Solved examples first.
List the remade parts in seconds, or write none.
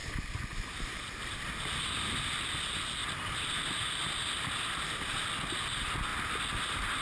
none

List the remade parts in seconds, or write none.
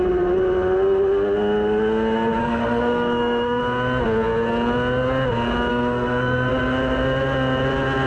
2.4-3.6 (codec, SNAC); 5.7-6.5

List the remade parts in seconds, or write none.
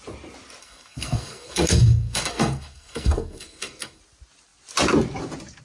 0.6-4.0 (codec, SNAC)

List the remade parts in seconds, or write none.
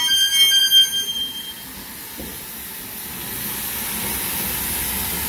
none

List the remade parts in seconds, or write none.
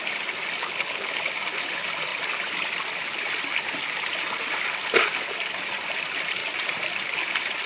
0.6-1.3 (codec, HILCodec)